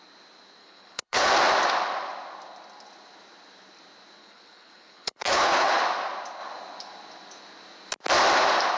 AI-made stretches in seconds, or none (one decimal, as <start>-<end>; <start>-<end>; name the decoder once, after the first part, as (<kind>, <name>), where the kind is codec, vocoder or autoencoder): 0.6-1.3 (codec, HILCodec); 4.2-5.8